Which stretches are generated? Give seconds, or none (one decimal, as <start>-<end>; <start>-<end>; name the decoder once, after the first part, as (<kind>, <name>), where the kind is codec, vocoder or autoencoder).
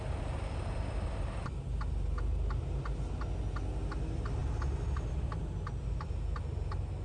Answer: none